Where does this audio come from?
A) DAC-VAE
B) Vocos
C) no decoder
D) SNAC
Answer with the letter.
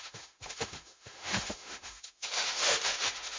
A